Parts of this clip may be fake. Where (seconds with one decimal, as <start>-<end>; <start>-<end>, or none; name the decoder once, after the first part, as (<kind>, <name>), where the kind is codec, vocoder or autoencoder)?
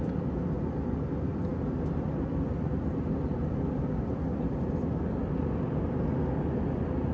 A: none